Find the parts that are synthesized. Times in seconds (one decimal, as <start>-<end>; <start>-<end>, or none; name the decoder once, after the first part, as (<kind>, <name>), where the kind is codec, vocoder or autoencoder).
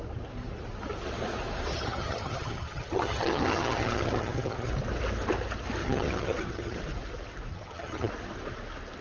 1.7-4.7 (vocoder, HiFi-GAN); 5.8-6.8; 7.5-8.1